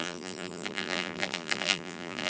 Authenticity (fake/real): fake